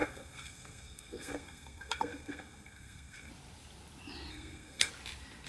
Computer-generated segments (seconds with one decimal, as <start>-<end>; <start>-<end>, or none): 0.0-3.3; 4.3-4.9